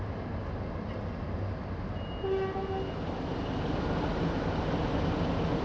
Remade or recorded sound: recorded